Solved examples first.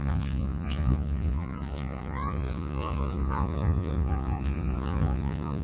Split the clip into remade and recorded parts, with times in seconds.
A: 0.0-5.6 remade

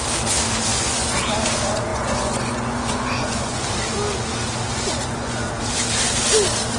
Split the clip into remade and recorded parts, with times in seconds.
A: 0.0-0.7 recorded; 0.7-1.2 remade; 1.2-1.9 recorded; 1.9-3.7 remade; 3.7-4.7 recorded; 4.7-5.5 remade; 5.5-6.8 recorded

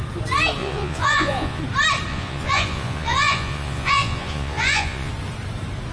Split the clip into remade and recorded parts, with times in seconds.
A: 0.0-0.6 recorded; 0.6-1.6 remade; 1.6-2.1 recorded; 2.1-5.1 remade; 5.1-5.9 recorded

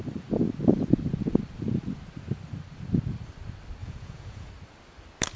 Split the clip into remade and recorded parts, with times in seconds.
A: 0.0-3.8 recorded; 3.8-4.5 remade; 4.5-5.4 recorded